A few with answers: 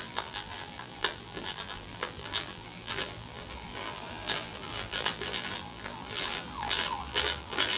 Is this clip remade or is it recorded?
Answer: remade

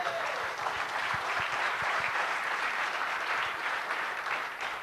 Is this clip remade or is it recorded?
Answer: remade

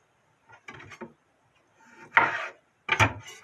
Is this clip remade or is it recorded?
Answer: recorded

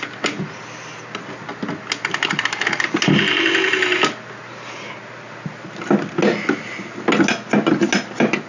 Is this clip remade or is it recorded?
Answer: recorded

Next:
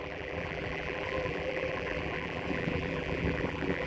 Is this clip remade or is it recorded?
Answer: remade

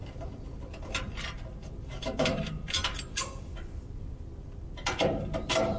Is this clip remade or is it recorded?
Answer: remade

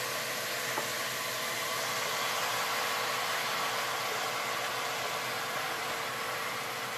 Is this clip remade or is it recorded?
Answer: recorded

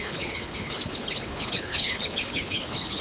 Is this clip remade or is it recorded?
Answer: remade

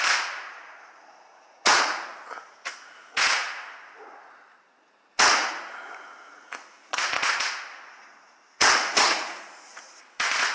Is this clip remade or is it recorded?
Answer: remade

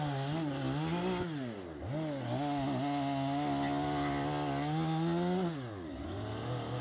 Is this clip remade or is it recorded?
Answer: recorded